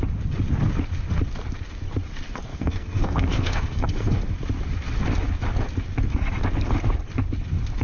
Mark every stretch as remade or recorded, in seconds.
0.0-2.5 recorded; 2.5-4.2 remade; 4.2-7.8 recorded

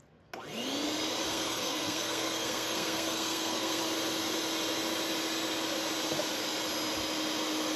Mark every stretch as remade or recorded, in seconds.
0.0-1.3 recorded; 1.3-3.8 remade; 3.8-7.8 recorded

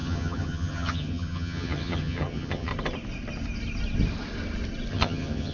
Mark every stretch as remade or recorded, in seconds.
0.0-2.7 remade; 2.7-4.9 recorded; 4.9-5.5 remade